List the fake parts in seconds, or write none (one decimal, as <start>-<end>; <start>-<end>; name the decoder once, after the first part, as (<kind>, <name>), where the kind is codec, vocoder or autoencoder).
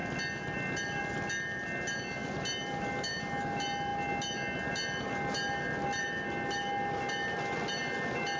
none